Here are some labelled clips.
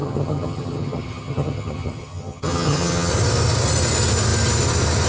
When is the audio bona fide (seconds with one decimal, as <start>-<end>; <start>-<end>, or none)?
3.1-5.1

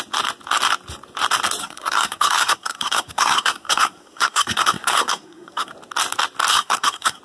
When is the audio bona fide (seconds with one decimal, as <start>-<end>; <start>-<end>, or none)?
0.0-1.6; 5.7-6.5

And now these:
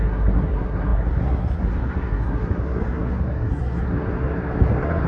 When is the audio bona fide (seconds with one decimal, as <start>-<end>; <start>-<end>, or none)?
none